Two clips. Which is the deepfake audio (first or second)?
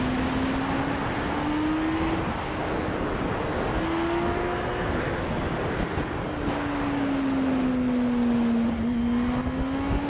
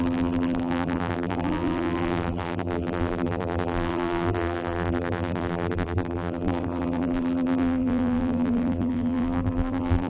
second